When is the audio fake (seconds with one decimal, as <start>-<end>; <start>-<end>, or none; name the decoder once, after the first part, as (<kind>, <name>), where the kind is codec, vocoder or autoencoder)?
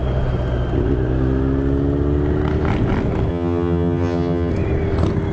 3.3-4.5 (vocoder, HiFi-GAN)